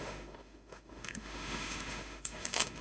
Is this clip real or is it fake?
fake